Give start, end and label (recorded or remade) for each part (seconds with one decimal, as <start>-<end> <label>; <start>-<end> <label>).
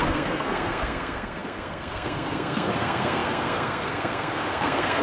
0.0-5.0 remade